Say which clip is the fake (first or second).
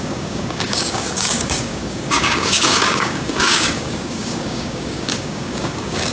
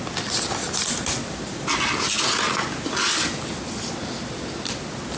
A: first